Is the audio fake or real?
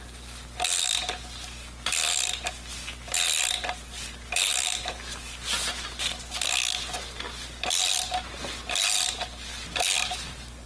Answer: real